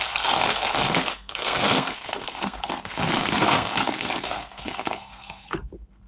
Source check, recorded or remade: remade